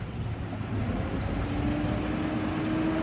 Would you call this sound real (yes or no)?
yes